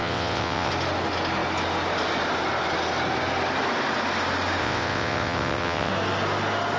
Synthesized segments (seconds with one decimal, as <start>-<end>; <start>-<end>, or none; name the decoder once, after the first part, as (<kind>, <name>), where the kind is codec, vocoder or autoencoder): 0.0-0.7 (vocoder, WaveNeXt); 4.6-5.9